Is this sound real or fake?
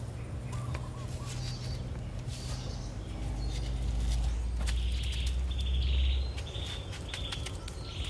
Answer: real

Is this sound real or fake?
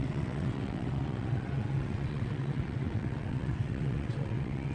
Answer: fake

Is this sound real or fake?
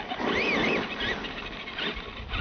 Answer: real